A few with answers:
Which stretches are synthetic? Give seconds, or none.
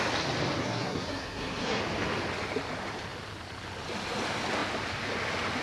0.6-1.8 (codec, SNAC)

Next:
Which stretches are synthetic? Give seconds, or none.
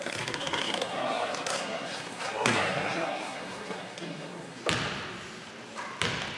0.0-4.6 (codec, SNAC)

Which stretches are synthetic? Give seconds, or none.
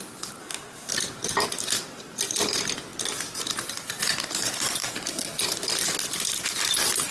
0.4-0.9 (codec, SNAC)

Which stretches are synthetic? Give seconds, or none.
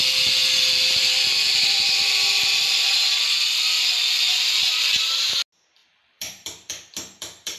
0.4-5.0 (vocoder, BigVGAN v2); 5.8-7.6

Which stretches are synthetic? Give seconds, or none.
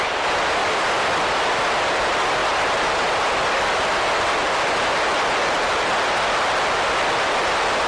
0.6-1.2 (vocoder, BigVGAN v2); 2.4-3.3